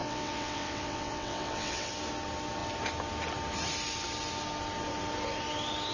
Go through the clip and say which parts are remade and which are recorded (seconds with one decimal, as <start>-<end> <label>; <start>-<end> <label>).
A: 0.0-1.9 remade; 1.9-5.9 recorded